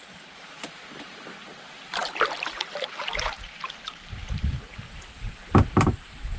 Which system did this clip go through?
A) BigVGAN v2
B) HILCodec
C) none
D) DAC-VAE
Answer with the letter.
A